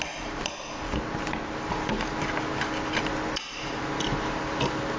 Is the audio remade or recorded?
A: recorded